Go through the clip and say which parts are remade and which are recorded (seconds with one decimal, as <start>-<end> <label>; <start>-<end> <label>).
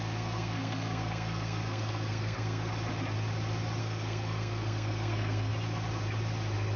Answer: 0.0-2.7 remade; 2.7-3.8 recorded; 3.8-5.5 remade; 5.5-6.8 recorded